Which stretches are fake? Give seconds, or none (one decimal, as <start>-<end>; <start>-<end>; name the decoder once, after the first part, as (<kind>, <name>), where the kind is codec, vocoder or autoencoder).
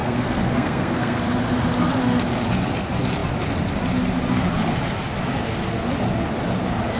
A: 0.0-1.2 (codec, SNAC)